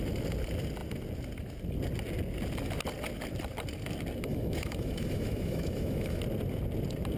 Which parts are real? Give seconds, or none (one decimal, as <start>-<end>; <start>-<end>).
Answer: 0.0-4.3; 6.2-7.2